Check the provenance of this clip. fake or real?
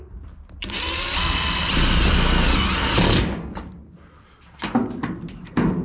real